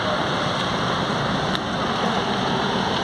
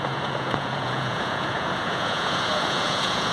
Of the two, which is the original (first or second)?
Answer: first